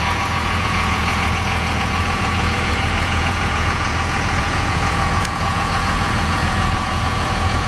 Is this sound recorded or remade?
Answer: remade